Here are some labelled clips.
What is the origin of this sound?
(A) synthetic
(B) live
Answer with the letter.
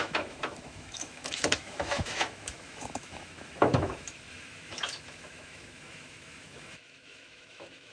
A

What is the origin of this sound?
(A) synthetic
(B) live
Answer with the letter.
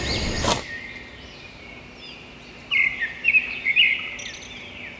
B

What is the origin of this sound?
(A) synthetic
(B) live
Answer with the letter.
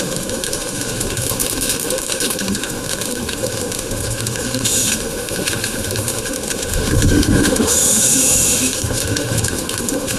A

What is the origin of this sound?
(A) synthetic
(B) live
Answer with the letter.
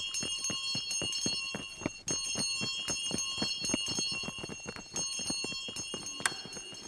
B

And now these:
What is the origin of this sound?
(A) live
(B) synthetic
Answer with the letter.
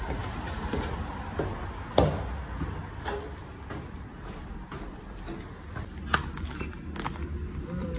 A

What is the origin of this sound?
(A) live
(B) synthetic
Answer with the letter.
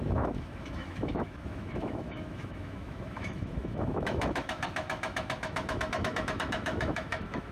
B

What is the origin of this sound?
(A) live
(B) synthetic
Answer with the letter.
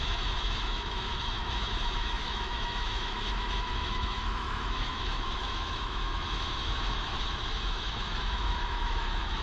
B